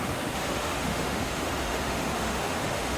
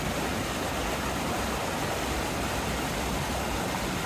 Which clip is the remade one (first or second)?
first